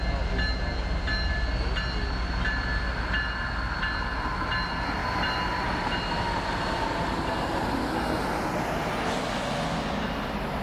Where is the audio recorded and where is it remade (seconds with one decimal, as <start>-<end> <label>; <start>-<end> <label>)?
0.0-10.6 recorded